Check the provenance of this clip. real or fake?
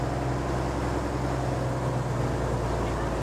real